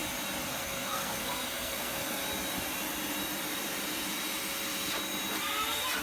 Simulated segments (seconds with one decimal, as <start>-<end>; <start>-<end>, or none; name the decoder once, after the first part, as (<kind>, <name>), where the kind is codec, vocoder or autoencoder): 0.5-2.2 (codec, SNAC)